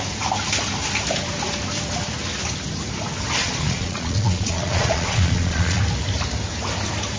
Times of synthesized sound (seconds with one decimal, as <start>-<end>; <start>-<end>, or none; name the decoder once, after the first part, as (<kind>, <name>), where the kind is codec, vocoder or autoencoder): 3.4-5.8 (vocoder, Vocos)